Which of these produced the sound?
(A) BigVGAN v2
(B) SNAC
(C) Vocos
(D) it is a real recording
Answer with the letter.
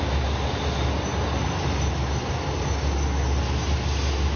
D